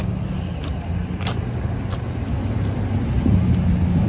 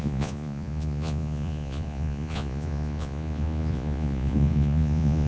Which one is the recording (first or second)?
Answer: first